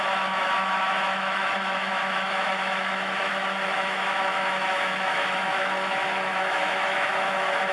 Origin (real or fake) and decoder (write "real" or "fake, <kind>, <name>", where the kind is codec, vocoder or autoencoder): fake, autoencoder, DAC-VAE